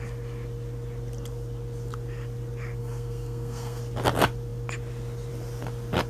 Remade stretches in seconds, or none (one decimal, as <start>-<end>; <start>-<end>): 2.8-3.8